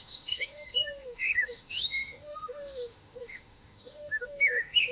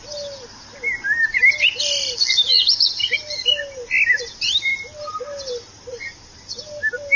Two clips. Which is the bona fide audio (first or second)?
second